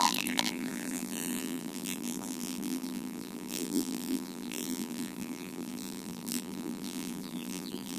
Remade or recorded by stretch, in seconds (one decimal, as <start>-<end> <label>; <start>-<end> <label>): 0.0-8.0 remade